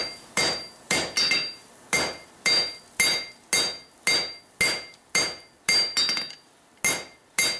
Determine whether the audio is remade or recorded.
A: recorded